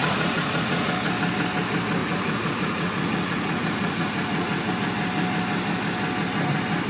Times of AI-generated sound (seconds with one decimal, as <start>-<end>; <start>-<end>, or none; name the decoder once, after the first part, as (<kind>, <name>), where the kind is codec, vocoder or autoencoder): 0.0-0.9 (vocoder, Vocos); 2.0-4.7